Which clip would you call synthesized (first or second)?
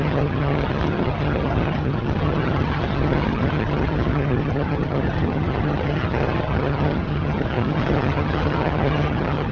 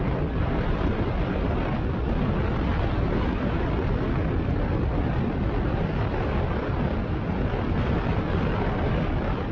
first